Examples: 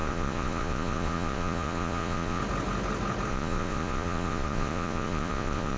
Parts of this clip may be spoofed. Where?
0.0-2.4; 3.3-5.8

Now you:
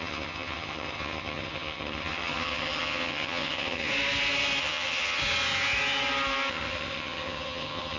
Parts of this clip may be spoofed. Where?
0.0-3.9; 4.6-5.2; 6.5-8.0

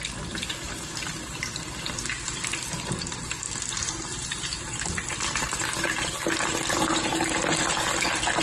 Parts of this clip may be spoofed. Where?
0.0-7.1